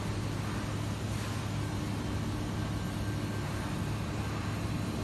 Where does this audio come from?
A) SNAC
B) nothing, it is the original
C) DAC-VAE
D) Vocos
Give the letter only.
B